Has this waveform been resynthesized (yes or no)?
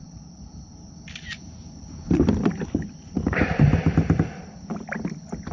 no